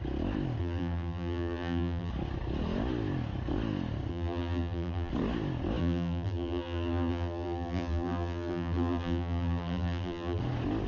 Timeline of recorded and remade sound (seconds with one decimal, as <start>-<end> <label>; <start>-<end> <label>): 0.0-0.6 recorded; 0.6-2.1 remade; 2.1-4.1 recorded; 4.1-5.1 remade; 5.1-5.8 recorded; 5.8-10.4 remade; 10.4-10.9 recorded